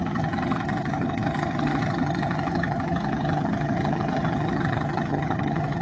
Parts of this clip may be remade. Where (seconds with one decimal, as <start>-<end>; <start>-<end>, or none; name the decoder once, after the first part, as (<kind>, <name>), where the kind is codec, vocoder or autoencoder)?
0.0-5.8 (vocoder, HiFi-GAN)

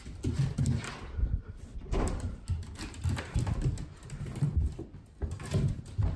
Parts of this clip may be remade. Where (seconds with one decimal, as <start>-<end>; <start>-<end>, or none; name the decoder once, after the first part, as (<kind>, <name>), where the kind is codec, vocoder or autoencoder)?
1.7-5.4 (vocoder, BigVGAN v2)

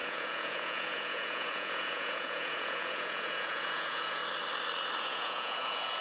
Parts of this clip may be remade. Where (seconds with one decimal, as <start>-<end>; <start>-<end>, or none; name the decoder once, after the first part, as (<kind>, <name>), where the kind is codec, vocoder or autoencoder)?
0.0-4.2 (vocoder, Vocos); 5.0-6.0

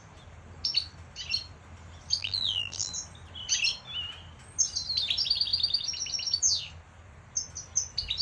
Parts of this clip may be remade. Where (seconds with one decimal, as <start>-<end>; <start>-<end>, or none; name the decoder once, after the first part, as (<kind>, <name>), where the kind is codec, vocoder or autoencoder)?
2.2-2.9 (vocoder, BigVGAN v2)

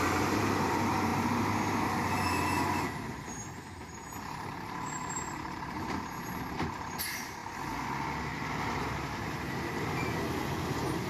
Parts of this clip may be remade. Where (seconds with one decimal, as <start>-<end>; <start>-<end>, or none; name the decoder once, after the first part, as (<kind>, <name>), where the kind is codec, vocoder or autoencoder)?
0.0-7.4 (vocoder, BigVGAN v2); 8.9-11.1